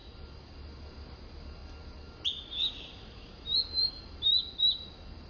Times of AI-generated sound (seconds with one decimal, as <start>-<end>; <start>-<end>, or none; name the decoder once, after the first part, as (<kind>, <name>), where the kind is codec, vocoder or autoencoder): none